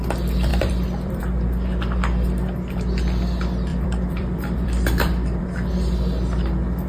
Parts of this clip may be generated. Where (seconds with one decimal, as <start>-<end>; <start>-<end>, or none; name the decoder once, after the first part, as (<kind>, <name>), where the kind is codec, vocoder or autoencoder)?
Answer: 0.5-1.2 (vocoder, BigVGAN v2); 3.7-5.4